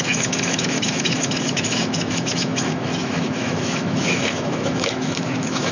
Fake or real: fake